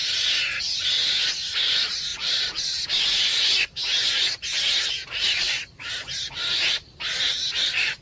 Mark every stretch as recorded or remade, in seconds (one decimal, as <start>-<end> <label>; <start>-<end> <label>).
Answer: 0.0-0.6 recorded; 0.6-2.1 remade; 2.1-6.7 recorded; 6.7-8.0 remade